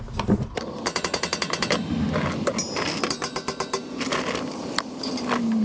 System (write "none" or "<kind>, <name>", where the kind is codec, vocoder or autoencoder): none